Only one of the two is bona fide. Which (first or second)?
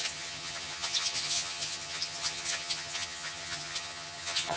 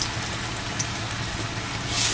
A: second